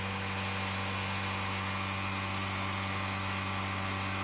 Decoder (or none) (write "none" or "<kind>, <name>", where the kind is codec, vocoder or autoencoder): none